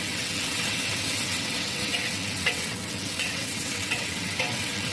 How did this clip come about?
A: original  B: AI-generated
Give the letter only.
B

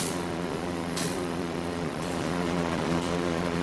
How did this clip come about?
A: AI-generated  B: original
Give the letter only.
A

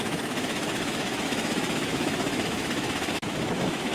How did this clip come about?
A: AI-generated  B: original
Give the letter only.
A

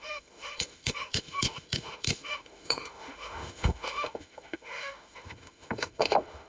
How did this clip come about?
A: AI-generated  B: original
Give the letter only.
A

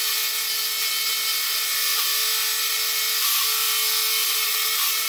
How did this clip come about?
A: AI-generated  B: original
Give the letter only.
B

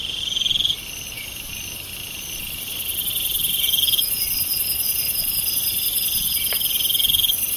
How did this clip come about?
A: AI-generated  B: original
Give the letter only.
B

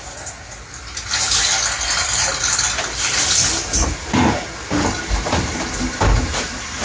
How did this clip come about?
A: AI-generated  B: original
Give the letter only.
B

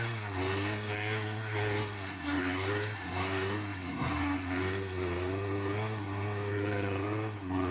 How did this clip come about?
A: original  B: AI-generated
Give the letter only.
B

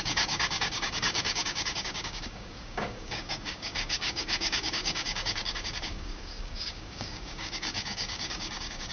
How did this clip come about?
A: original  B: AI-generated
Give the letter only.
B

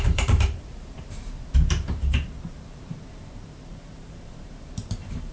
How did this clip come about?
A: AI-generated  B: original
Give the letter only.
A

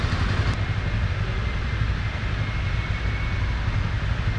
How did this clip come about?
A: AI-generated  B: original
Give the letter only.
B